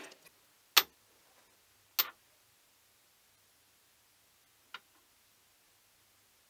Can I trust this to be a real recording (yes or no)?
yes